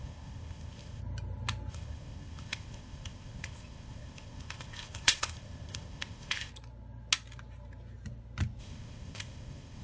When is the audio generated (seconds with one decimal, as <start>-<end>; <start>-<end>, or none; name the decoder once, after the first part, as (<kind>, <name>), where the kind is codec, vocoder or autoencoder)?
0.0-1.0 (codec, ZipCodec); 1.7-6.5; 8.6-9.8